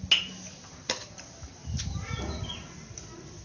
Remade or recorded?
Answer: recorded